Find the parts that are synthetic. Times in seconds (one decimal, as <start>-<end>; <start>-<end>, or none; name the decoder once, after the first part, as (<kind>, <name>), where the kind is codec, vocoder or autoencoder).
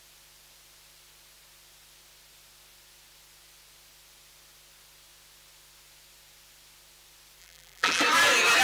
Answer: 7.4-8.0 (vocoder, BigVGAN v2)